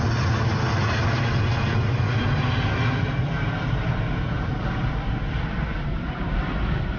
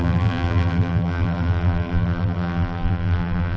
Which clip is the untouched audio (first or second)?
first